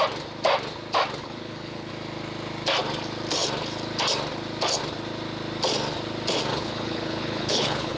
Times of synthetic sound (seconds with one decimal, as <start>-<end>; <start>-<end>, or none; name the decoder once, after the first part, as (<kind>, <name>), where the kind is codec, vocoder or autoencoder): 1.2-1.9 (codec, HILCodec); 6.5-8.0